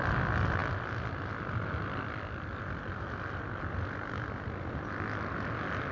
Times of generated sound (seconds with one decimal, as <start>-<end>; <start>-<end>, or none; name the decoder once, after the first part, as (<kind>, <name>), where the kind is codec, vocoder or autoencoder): none